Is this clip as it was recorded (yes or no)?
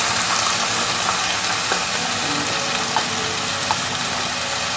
yes